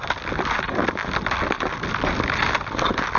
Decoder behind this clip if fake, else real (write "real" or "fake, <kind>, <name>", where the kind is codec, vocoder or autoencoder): real